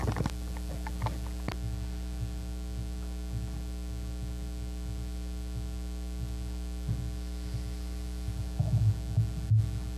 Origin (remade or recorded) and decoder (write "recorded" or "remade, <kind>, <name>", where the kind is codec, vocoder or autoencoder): recorded